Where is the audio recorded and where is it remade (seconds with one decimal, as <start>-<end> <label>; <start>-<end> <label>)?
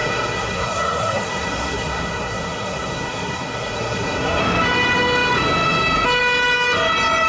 0.0-4.4 remade; 4.4-7.3 recorded